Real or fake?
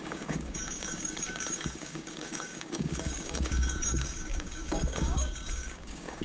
fake